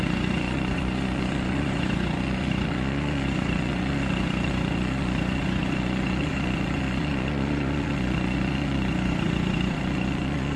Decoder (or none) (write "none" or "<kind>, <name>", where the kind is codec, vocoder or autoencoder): vocoder, Vocos